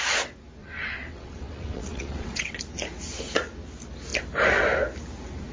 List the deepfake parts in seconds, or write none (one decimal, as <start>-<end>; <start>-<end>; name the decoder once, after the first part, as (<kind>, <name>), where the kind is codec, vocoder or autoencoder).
0.6-2.6 (vocoder, WaveNeXt)